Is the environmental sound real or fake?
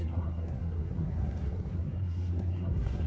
fake